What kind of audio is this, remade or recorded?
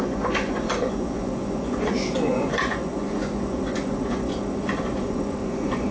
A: remade